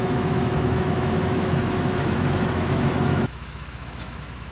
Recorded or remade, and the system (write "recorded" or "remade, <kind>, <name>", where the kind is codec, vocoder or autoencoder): remade, autoencoder, DAC-VAE